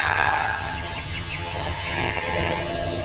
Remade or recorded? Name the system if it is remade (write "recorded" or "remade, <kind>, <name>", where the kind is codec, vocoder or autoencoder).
remade, vocoder, HiFi-GAN